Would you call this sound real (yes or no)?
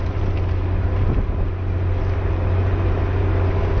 yes